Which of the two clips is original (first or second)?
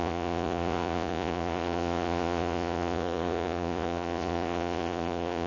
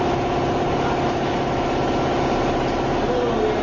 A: second